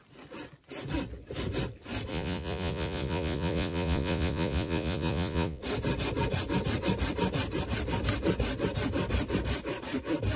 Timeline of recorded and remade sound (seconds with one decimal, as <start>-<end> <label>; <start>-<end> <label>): 0.0-2.1 recorded; 2.1-5.6 remade; 5.6-10.4 recorded